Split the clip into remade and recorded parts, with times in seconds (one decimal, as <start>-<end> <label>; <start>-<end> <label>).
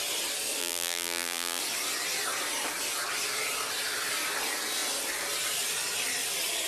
0.0-0.6 recorded; 0.6-1.6 remade; 1.6-6.7 recorded